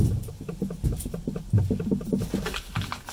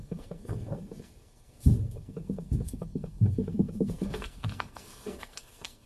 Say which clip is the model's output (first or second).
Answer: second